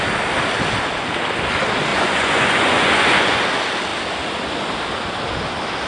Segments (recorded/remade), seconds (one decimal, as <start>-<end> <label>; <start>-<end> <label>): 0.0-1.9 recorded; 1.9-3.4 remade; 3.4-5.9 recorded

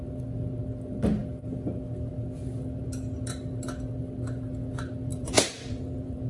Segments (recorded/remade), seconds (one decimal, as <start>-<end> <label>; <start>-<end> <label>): 0.0-5.1 recorded; 5.1-6.3 remade

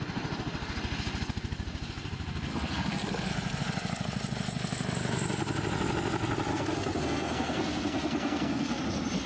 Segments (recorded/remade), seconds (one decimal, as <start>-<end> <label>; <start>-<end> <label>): 0.0-2.5 recorded; 2.5-3.3 remade; 3.3-6.5 recorded; 6.5-8.8 remade; 8.8-9.3 recorded